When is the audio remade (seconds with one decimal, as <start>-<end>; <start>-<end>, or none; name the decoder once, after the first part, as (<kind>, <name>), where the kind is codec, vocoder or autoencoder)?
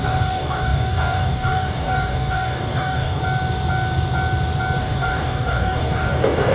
0.0-3.2 (codec, DAC); 4.8-6.5